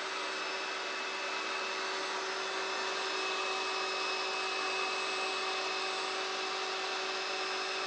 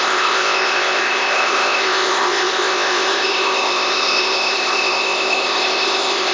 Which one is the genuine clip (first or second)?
first